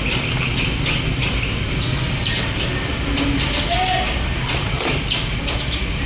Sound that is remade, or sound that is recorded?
recorded